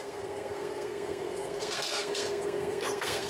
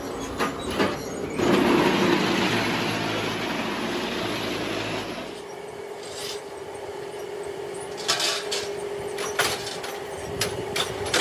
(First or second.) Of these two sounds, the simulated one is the first